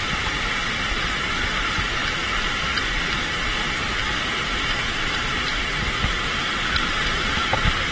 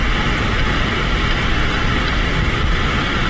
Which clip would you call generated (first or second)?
first